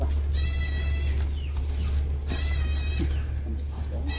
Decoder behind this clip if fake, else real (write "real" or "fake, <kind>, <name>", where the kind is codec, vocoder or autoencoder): real